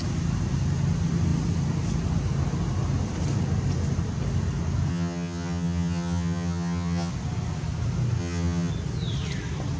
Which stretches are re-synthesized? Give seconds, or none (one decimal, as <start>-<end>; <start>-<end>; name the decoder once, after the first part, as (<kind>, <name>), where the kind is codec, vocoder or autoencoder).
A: 4.9-7.1 (vocoder, HiFi-GAN); 8.2-8.7